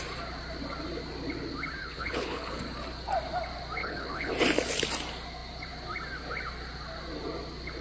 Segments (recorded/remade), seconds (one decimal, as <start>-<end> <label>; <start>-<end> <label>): 0.0-1.8 recorded; 1.8-2.6 remade; 2.6-3.8 recorded; 3.8-4.3 remade; 4.3-7.8 recorded